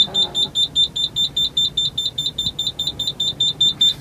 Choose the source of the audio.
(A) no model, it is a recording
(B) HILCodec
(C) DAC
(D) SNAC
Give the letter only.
A